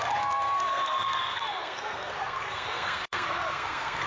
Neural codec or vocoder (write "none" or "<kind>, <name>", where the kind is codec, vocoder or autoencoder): codec, SNAC